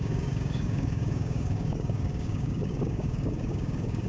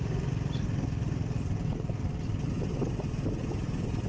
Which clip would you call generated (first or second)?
first